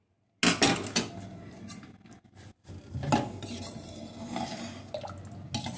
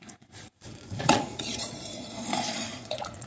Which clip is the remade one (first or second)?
second